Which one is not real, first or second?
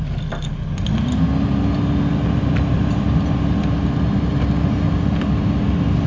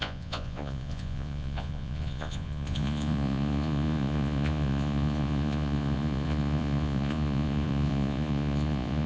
second